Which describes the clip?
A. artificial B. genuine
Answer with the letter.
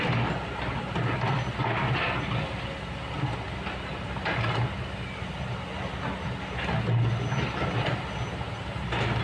B